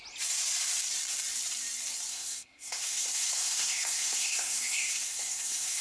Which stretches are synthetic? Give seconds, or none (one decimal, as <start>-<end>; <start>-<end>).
2.1-5.8